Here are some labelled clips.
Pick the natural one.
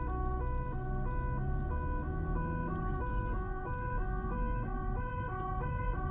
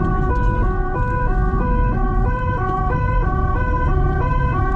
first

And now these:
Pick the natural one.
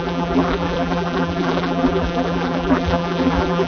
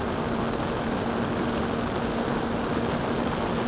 second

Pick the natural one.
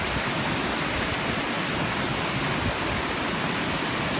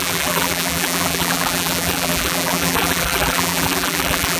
first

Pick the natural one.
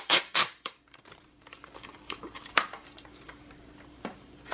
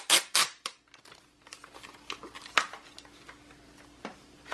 second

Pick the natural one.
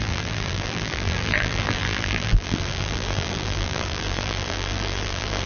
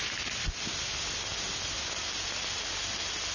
second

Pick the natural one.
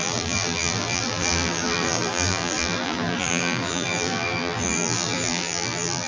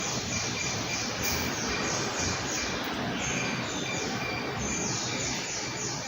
second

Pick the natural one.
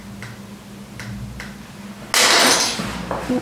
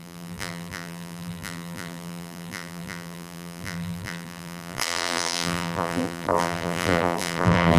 first